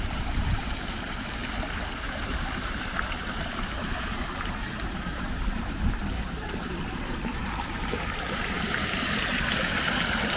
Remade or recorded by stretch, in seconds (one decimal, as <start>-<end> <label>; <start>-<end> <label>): 0.0-1.4 remade; 1.4-2.0 recorded; 2.0-10.4 remade

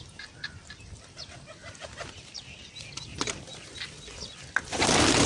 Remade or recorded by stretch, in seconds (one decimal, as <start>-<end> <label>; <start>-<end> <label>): 0.0-5.3 recorded

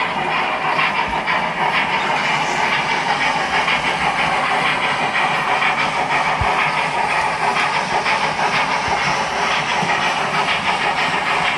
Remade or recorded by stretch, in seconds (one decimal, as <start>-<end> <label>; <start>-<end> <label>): 0.0-11.6 recorded

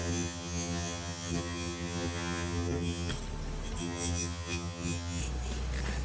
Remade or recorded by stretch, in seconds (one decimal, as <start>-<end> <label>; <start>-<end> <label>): 0.0-3.1 remade; 3.1-3.8 recorded; 3.8-5.2 remade; 5.2-6.0 recorded

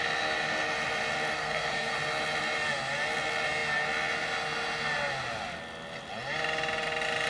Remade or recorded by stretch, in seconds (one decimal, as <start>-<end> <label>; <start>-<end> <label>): 0.0-1.4 recorded; 1.4-1.9 remade; 1.9-7.3 recorded

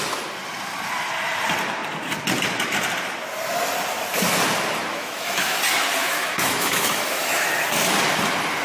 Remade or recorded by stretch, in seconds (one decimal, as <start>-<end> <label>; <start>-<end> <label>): 0.0-4.9 recorded; 4.9-5.6 remade; 5.6-6.0 recorded; 6.0-7.5 remade; 7.5-8.6 recorded

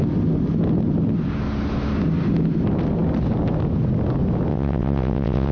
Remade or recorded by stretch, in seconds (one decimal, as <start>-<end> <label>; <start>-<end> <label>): 0.0-4.5 recorded; 4.5-5.5 remade

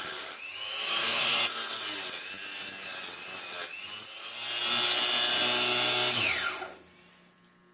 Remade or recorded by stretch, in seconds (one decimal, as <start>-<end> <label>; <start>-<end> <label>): 0.0-0.5 recorded; 0.5-1.4 remade; 1.4-7.7 recorded